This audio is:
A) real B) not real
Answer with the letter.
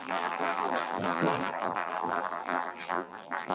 B